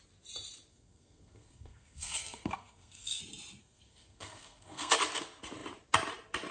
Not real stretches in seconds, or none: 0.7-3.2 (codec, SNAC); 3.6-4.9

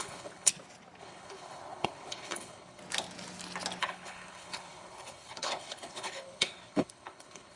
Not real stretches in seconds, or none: 0.0-0.5 (codec, HILCodec); 1.0-2.8; 3.8-7.6

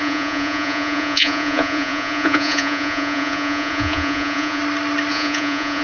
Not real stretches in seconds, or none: 0.0-4.6 (vocoder, Vocos); 5.1-5.8

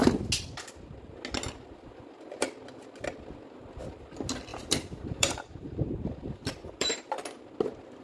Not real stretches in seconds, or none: 4.5-7.2 (vocoder, BigVGAN v2)

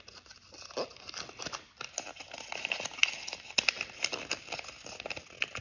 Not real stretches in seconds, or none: none